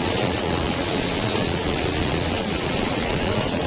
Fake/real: fake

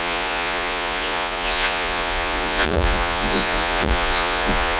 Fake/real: fake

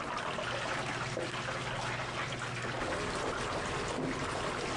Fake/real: real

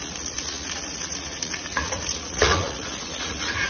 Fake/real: fake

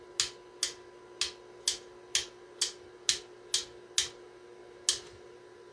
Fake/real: real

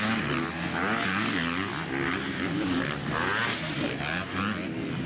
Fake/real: real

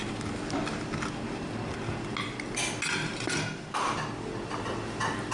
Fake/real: real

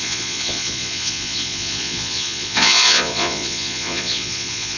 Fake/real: fake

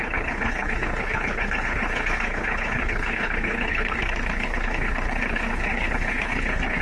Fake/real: fake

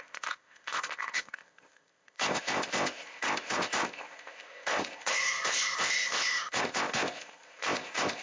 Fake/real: fake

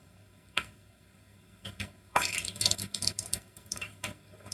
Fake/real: fake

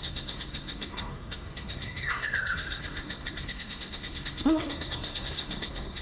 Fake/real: fake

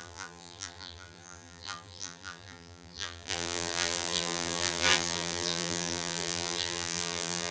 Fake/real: fake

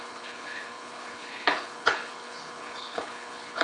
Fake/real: fake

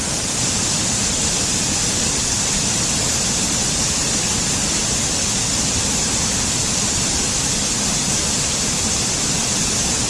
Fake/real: real